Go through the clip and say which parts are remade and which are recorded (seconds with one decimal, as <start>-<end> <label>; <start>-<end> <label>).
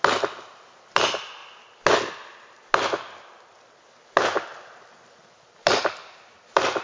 0.0-6.8 recorded